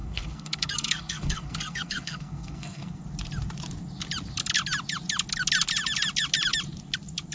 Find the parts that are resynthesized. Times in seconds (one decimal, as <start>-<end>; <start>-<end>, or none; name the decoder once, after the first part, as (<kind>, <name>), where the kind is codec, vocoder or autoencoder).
0.0-3.0 (codec, SNAC)